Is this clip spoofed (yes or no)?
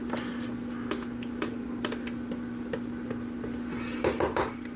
no